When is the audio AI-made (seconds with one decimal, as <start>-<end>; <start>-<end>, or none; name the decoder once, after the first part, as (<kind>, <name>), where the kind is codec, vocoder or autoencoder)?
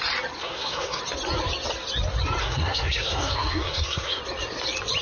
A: 0.4-1.0 (codec, SNAC); 2.4-4.2